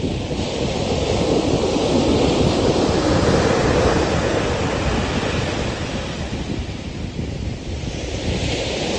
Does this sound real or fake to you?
real